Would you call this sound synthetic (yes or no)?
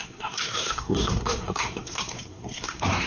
yes